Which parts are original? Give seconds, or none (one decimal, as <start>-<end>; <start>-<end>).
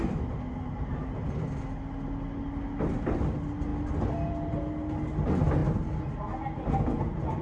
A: 0.0-7.4